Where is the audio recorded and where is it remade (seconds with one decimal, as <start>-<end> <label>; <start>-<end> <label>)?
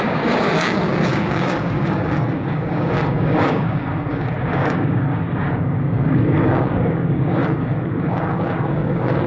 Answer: 0.0-9.3 remade